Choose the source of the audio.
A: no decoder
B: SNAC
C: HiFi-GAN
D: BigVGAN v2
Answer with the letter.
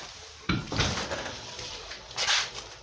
D